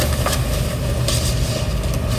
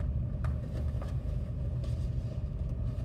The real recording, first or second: first